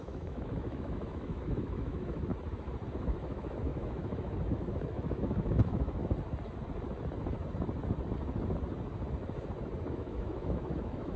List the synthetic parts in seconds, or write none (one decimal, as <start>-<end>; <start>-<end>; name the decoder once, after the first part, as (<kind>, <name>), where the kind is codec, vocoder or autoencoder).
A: 0.0-2.3 (autoencoder, DAC-VAE); 2.9-6.0; 9.9-11.2